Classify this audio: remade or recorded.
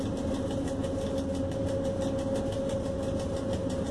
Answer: recorded